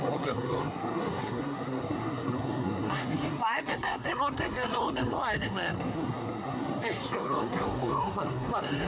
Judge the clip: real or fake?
fake